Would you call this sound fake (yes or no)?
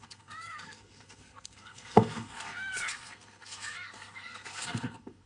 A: yes